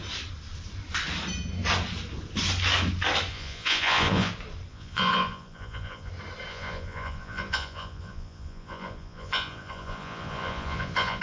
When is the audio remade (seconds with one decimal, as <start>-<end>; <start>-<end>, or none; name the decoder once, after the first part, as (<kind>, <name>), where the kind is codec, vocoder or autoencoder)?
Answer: 3.3-4.3 (vocoder, Vocos); 4.7-6.1; 6.5-11.2